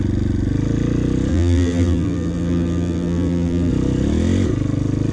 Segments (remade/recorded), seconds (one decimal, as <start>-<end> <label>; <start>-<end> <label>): 0.0-1.3 recorded; 1.3-3.7 remade; 3.7-5.1 recorded